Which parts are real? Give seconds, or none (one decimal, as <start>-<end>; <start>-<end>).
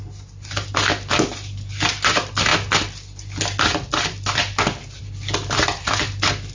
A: 0.0-6.5